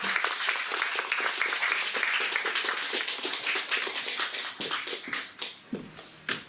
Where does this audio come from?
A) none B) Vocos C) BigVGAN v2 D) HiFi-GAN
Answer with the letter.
A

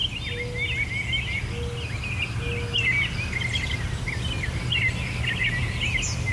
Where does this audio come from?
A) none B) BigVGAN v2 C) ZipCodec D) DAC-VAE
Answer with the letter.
A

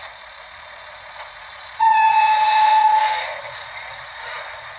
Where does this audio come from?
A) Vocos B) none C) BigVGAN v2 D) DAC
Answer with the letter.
A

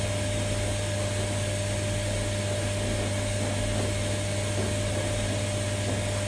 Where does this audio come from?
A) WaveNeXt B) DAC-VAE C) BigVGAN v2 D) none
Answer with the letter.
D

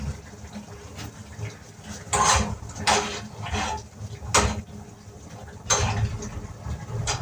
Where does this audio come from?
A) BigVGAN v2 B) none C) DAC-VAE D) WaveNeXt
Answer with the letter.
B